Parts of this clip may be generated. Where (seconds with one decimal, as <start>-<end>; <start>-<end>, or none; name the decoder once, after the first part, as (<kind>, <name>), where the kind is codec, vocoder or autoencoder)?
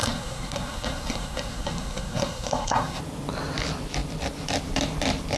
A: 0.0-3.0 (codec, SNAC)